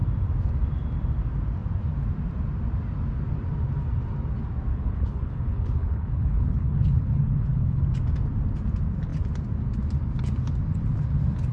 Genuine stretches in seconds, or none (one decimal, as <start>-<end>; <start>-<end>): 0.0-4.7; 7.8-11.5